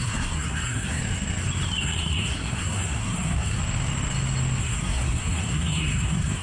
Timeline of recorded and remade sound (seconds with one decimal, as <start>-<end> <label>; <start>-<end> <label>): 0.0-1.0 remade; 1.0-1.8 recorded; 1.8-3.6 remade; 3.6-4.6 recorded; 4.6-6.4 remade